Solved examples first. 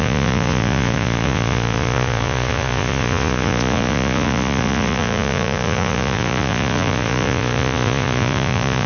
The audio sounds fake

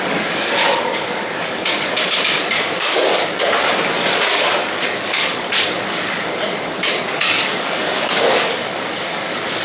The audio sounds fake